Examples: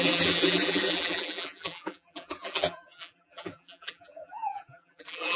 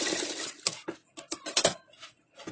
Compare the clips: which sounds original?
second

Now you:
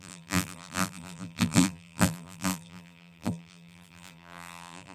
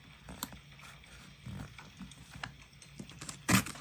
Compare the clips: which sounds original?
second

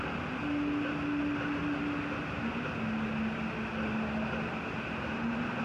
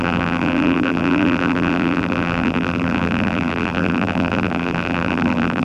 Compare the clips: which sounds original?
first